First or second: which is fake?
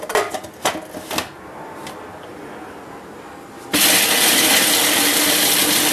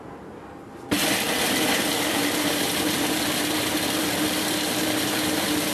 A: second